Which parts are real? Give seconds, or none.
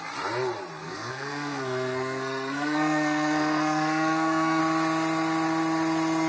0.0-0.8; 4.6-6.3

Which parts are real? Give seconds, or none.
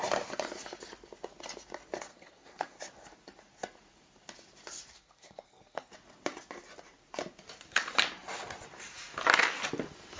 0.0-2.1; 2.8-4.9; 5.9-10.2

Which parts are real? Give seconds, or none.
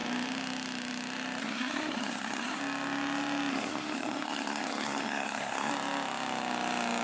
0.0-1.4; 2.6-3.5; 5.7-7.0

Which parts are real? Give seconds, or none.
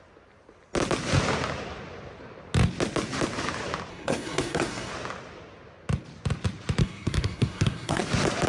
0.0-3.9; 4.9-6.8; 8.0-8.5